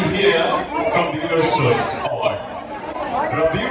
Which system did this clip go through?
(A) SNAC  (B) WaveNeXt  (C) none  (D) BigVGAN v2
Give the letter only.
D